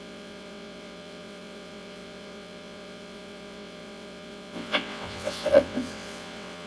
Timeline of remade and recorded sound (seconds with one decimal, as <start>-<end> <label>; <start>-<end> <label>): 0.0-6.7 remade